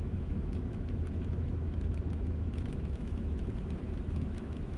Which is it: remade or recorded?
remade